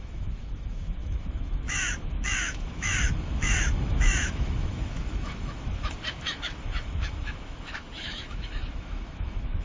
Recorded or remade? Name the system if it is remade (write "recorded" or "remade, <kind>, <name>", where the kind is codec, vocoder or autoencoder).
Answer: remade, autoencoder, DAC-VAE